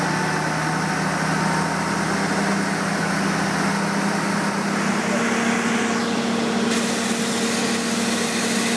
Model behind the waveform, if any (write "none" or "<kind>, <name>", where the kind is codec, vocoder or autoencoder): none